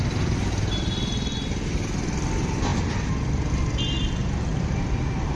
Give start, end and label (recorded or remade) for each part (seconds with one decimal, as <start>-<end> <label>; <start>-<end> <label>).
0.0-4.2 recorded; 4.2-4.8 remade; 4.8-5.4 recorded